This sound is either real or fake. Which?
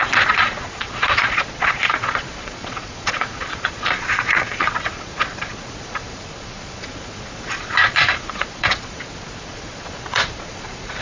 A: fake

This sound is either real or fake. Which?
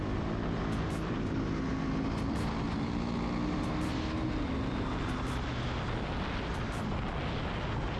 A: real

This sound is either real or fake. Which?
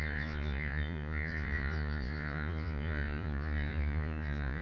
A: fake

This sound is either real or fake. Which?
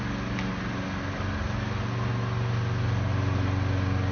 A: real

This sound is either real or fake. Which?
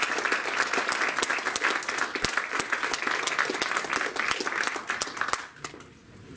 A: real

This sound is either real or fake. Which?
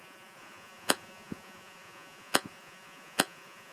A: fake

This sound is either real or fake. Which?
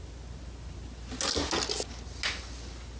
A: real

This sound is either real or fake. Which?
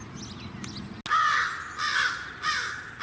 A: real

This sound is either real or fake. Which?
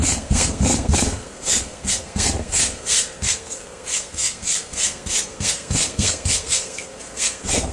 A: fake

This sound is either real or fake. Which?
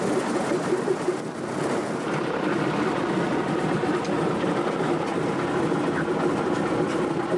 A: real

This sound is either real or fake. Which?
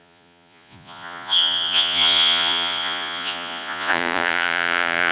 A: fake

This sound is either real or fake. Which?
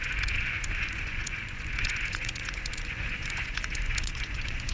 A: fake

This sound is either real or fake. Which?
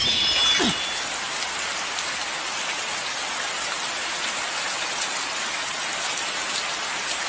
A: real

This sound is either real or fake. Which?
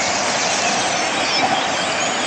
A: real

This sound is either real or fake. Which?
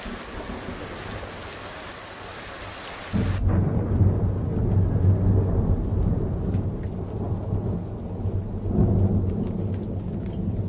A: real